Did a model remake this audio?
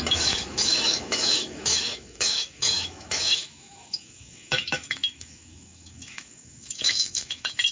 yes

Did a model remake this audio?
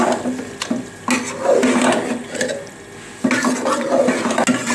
no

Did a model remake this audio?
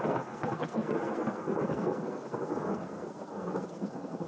yes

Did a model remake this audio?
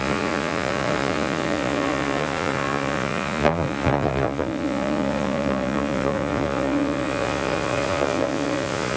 yes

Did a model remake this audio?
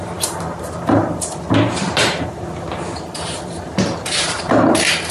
yes